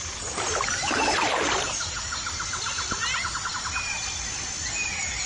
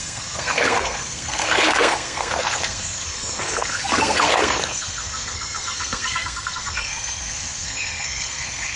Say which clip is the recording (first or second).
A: first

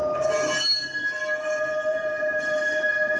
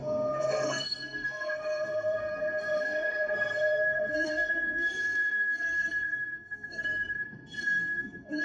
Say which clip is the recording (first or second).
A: first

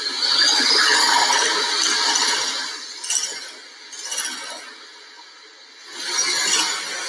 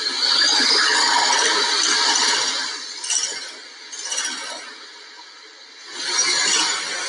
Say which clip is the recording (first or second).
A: first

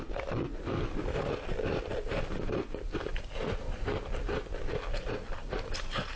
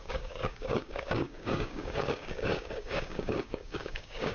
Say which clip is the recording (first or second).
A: first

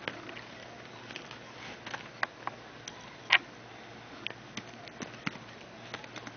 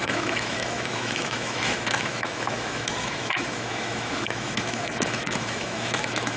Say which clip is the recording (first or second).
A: first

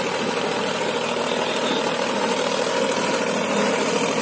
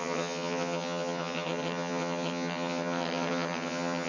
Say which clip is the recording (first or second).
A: first